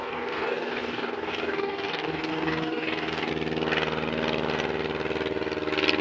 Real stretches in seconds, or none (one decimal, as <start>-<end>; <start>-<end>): 3.3-6.0